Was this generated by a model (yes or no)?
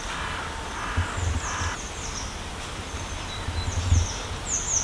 no